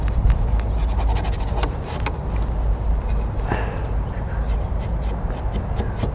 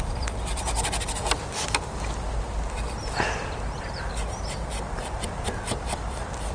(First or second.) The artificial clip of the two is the second